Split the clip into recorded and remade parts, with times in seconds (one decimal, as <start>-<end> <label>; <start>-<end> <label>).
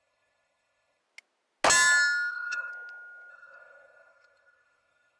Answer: 0.0-1.0 remade; 1.0-2.3 recorded; 2.3-2.7 remade; 2.7-3.3 recorded; 3.3-5.2 remade